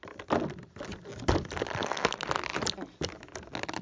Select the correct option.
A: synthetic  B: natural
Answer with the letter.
B